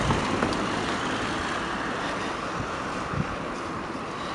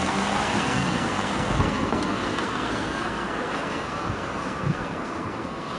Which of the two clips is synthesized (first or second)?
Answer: second